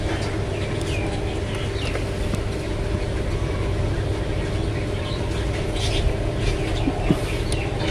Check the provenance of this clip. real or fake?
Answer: real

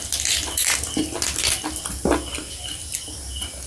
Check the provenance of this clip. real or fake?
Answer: real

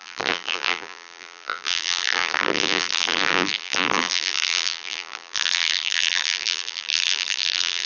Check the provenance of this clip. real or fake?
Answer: fake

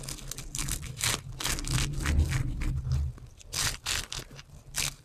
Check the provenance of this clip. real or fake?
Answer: real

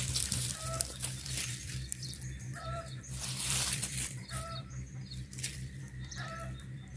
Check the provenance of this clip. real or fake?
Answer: fake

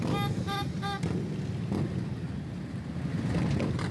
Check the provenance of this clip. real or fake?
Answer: real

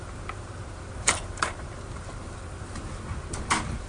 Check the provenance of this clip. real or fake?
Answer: fake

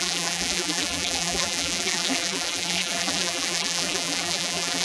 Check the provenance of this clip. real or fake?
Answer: fake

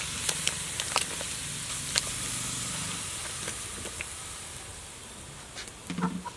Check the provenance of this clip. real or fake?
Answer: real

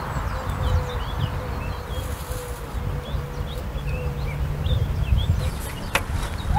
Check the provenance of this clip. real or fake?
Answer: real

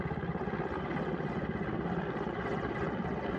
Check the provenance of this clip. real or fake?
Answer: real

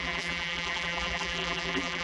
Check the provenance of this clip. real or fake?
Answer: fake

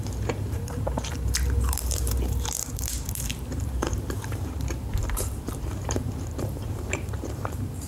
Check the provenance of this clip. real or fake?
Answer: fake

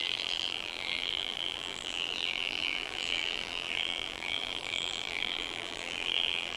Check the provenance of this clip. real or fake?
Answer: fake